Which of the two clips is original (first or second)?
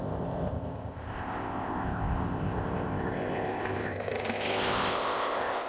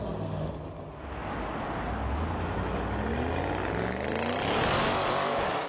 second